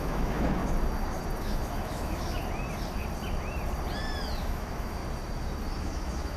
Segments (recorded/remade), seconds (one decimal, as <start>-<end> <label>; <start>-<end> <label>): 0.0-0.6 remade; 0.6-1.4 recorded; 1.4-2.4 remade; 2.4-4.4 recorded; 4.4-5.0 remade; 5.0-5.8 recorded; 5.8-6.4 remade